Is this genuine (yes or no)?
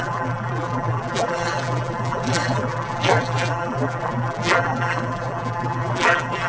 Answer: no